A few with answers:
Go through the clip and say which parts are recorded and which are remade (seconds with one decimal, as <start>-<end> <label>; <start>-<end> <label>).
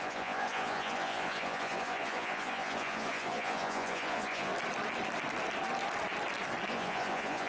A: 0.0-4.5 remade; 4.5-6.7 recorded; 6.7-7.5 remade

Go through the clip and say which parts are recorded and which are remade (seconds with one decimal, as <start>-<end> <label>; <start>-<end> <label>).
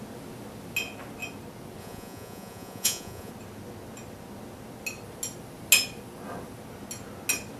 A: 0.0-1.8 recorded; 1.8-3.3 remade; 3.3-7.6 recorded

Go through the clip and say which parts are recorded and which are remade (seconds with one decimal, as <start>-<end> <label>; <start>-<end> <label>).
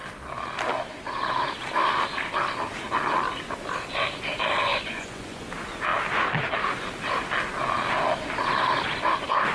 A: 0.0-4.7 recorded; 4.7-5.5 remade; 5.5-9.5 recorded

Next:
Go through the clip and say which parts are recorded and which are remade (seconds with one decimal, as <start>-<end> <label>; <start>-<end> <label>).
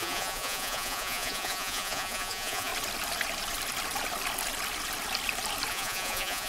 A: 0.0-2.7 remade; 2.7-5.7 recorded; 5.7-6.5 remade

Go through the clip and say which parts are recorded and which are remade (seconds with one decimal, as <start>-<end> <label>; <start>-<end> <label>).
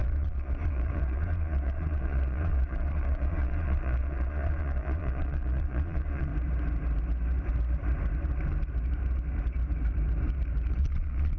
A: 0.0-6.3 remade; 6.3-10.7 recorded; 10.7-11.4 remade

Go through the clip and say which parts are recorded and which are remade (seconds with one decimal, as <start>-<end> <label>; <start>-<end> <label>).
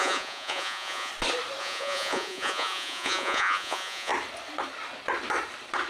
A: 0.0-1.1 remade; 1.1-1.6 recorded; 1.6-4.1 remade; 4.1-5.9 recorded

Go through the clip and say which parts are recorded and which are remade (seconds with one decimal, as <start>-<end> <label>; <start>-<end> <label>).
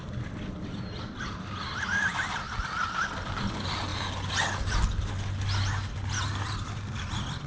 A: 0.0-7.5 recorded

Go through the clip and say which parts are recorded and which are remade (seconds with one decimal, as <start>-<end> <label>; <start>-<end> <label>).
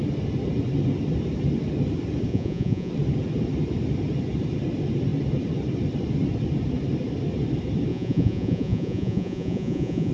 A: 0.0-2.3 recorded; 2.3-2.9 remade; 2.9-7.9 recorded; 7.9-10.1 remade